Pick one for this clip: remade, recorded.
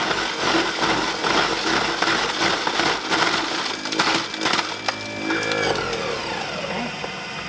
recorded